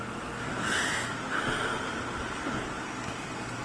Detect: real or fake real